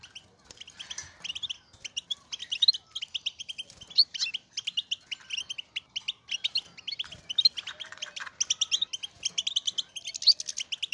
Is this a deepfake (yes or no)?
no